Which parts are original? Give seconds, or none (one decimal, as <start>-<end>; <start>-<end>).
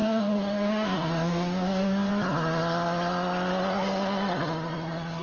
2.1-5.2